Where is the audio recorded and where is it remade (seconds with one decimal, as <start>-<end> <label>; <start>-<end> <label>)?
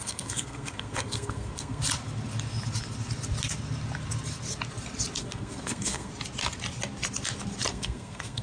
0.0-1.8 remade; 1.8-5.2 recorded; 5.2-6.1 remade; 6.1-7.7 recorded; 7.7-8.4 remade